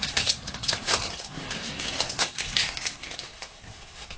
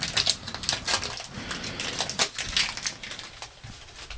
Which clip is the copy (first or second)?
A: first